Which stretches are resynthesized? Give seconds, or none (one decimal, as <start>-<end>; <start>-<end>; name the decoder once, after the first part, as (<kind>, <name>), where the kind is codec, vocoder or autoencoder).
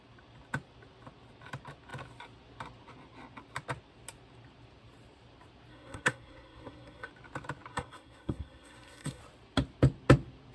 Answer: 5.7-7.1 (codec, SNAC); 7.7-9.2